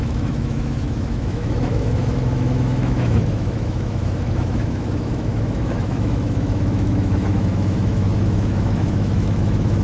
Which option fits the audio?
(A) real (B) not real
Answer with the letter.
B